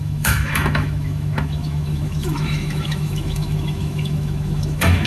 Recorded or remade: remade